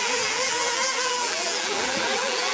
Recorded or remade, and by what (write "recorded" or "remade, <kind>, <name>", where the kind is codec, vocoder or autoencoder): remade, vocoder, BigVGAN v2